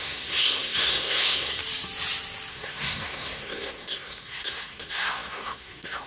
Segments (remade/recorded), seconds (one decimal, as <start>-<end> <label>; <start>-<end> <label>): 0.0-1.6 remade; 1.6-2.5 recorded; 2.5-6.1 remade